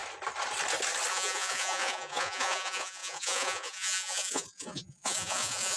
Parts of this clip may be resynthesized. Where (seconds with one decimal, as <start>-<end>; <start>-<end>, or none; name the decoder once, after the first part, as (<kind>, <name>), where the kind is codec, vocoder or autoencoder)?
1.1-5.8 (vocoder, Vocos)

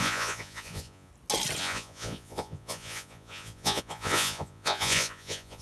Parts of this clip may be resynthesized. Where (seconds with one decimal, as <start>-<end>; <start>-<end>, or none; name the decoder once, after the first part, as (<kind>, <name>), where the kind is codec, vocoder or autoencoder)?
0.0-1.1 (vocoder, Vocos); 1.6-5.6

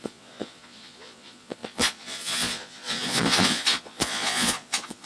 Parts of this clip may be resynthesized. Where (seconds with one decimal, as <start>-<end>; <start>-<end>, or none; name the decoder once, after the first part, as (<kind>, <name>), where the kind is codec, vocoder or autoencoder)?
0.0-5.1 (vocoder, Vocos)

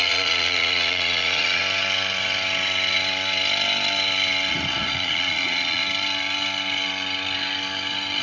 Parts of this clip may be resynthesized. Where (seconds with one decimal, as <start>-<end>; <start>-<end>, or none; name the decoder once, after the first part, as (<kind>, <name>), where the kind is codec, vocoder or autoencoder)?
0.0-1.6 (vocoder, Vocos); 4.5-5.8